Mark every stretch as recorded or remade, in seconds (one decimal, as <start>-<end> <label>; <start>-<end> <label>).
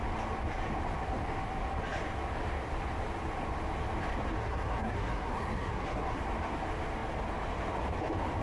0.0-4.4 recorded; 4.4-6.2 remade; 6.2-8.4 recorded